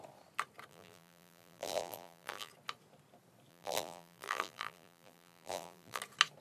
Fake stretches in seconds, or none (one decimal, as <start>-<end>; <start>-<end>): 0.7-2.5; 3.5-6.0